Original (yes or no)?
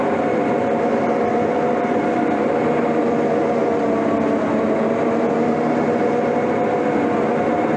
yes